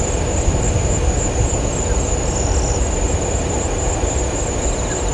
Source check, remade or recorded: recorded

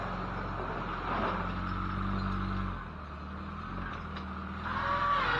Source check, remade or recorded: recorded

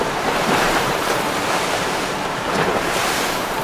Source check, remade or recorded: remade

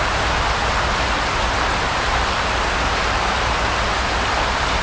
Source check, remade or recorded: recorded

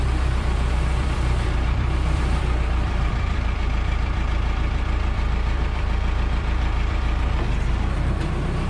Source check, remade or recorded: remade